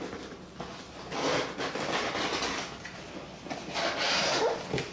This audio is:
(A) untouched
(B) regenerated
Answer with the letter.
A